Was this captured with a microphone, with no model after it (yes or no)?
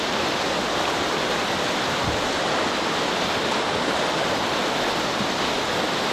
yes